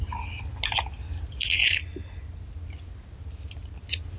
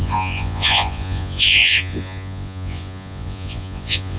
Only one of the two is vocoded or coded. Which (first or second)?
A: second